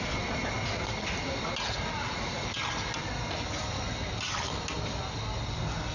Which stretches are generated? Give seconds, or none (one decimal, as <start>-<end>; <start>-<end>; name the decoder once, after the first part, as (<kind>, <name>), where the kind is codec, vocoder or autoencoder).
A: none